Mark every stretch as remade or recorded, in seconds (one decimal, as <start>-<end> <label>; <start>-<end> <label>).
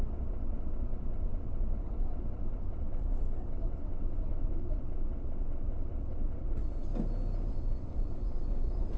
0.0-6.9 remade; 6.9-7.5 recorded; 7.5-9.0 remade